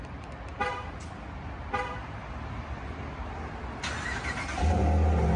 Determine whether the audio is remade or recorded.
recorded